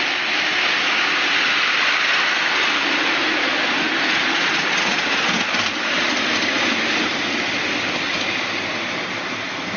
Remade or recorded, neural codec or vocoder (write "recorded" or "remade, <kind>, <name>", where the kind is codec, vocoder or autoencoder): recorded